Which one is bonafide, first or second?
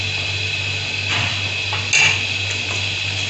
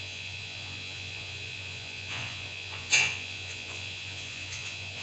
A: first